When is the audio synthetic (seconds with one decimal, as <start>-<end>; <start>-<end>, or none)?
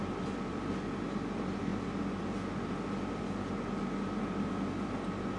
none